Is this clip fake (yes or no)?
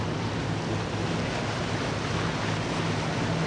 no